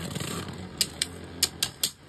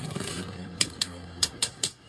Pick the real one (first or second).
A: first